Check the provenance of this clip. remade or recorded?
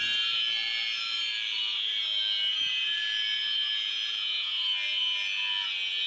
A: recorded